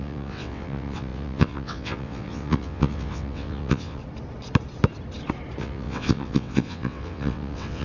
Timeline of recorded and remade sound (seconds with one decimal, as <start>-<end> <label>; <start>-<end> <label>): 0.0-4.0 remade; 4.0-5.6 recorded; 5.6-7.8 remade

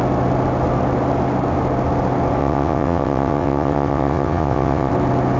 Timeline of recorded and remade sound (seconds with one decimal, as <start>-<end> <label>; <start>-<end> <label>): 0.0-2.4 recorded; 2.4-4.9 remade; 4.9-5.4 recorded

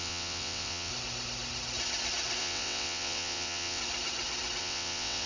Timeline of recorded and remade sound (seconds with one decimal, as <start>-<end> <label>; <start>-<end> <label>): 0.0-0.9 remade; 0.9-2.4 recorded; 2.4-3.8 remade; 3.8-4.6 recorded; 4.6-5.3 remade

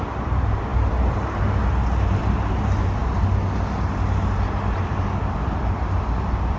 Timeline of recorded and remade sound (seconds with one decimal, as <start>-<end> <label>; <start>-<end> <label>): 0.0-6.6 recorded

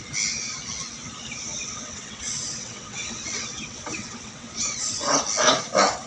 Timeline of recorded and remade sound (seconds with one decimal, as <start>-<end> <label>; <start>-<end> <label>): 0.0-1.5 recorded; 1.5-5.2 remade; 5.2-6.1 recorded

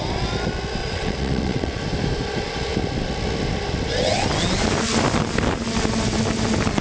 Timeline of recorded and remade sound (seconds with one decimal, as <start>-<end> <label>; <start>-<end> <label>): 0.0-0.8 recorded; 0.8-1.8 remade; 1.8-6.8 recorded